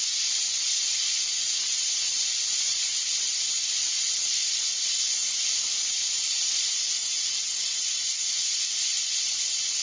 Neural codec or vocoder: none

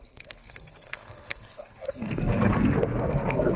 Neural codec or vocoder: codec, SNAC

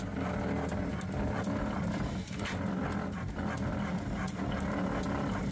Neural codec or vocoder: none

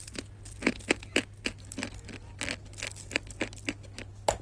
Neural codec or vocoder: none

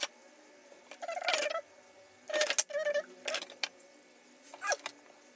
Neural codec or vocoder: none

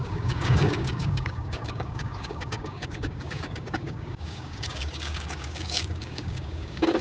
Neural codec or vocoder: codec, DAC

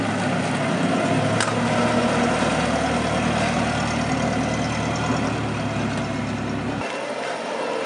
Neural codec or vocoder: none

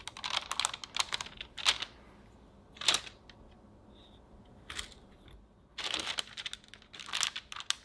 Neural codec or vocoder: none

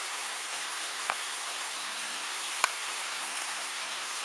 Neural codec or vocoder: codec, SNAC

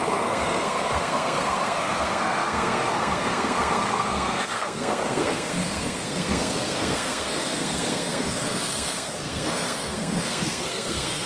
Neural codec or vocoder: codec, SNAC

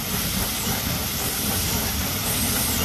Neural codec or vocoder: none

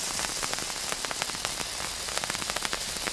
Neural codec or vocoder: none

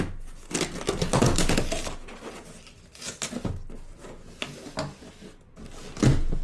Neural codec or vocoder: none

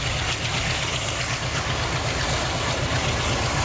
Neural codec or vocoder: none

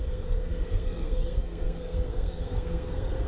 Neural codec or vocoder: codec, SNAC